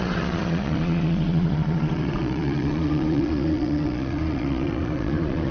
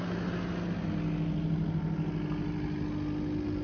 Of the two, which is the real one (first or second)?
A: second